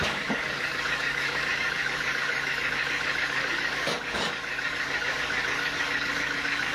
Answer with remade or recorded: remade